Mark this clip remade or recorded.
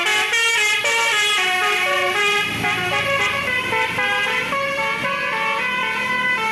recorded